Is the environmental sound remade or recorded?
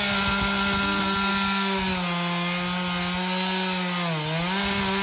recorded